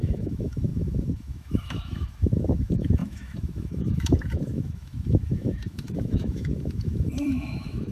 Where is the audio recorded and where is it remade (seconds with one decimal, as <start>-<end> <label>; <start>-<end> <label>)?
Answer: 0.0-7.9 remade